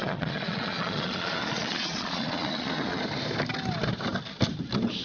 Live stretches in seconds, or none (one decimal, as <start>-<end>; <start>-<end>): 3.0-5.0

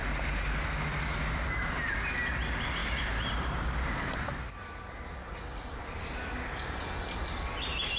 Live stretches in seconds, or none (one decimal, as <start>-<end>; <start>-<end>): 0.0-8.0

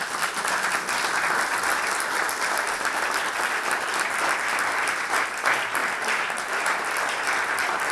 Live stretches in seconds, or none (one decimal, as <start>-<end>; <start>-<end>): 0.0-7.9

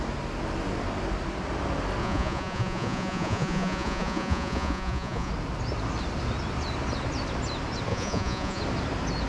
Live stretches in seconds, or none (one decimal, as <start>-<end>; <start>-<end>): 0.0-2.0; 5.3-7.9; 8.6-9.3

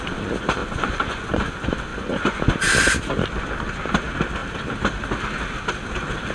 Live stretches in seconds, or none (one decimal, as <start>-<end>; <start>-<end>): 0.0-0.6; 1.5-1.9; 2.4-6.3